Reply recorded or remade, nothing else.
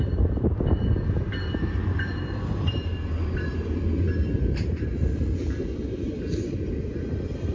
remade